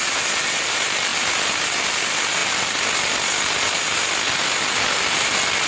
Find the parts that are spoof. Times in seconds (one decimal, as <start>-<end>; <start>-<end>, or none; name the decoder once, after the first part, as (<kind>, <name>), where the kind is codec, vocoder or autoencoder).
none